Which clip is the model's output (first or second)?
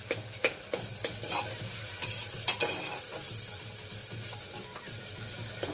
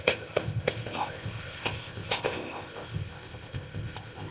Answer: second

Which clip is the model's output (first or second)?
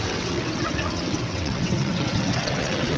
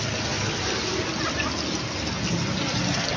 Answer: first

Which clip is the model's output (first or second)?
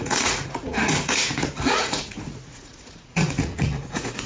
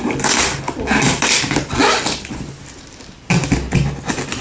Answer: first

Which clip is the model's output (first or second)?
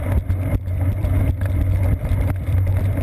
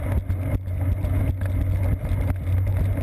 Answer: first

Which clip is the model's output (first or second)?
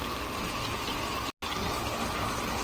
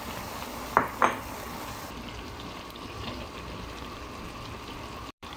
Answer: second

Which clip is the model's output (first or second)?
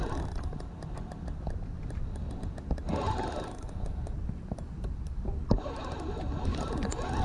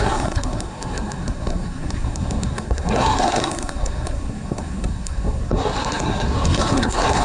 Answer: second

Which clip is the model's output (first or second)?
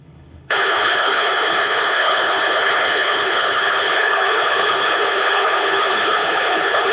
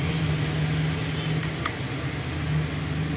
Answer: first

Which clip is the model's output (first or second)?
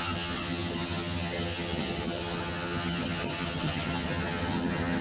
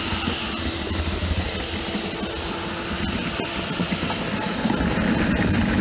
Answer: first